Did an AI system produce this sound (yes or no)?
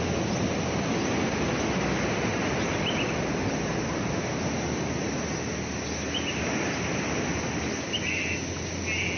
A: no